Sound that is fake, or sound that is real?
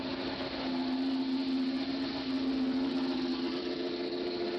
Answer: real